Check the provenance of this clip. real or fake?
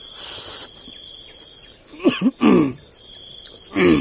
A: real